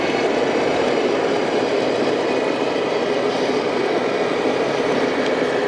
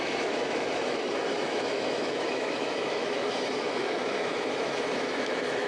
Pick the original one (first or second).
first